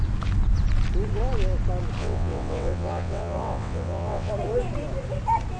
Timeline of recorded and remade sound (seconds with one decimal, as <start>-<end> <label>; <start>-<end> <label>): 0.0-2.0 recorded; 2.0-4.3 remade; 4.3-5.6 recorded